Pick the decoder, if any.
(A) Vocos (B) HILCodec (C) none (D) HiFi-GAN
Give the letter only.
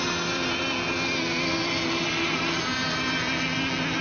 C